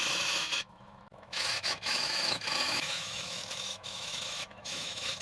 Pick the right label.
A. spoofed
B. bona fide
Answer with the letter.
A